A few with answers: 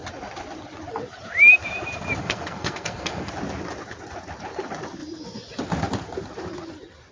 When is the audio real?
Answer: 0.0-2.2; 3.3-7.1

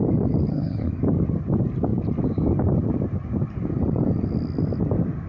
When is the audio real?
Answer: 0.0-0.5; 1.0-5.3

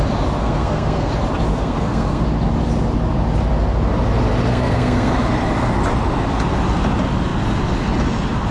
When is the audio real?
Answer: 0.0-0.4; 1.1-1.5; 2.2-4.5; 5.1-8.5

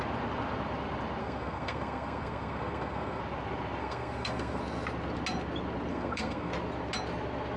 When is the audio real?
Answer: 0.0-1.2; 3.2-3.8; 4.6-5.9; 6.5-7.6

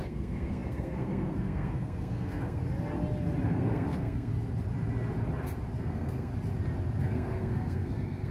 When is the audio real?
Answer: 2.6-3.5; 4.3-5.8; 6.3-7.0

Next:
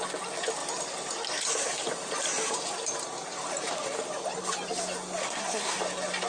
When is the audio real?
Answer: 0.0-5.2; 5.8-6.3

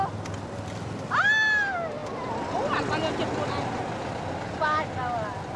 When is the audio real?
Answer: 0.0-5.6